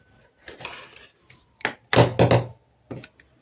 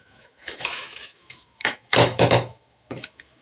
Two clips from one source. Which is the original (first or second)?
first